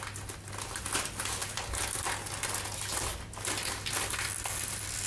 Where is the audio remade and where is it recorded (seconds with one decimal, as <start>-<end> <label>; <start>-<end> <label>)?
0.0-5.1 recorded